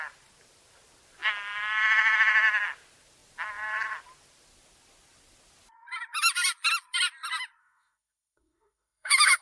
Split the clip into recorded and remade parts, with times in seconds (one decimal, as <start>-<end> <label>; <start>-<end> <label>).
0.0-7.6 recorded; 7.6-9.4 remade